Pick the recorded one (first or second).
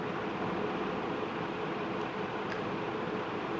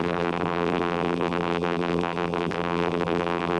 first